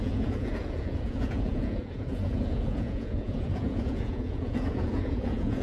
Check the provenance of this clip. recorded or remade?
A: remade